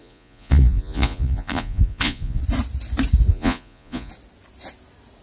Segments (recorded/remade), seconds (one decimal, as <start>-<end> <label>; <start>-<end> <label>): 0.0-2.4 remade; 2.4-3.3 recorded; 3.3-4.1 remade; 4.1-5.2 recorded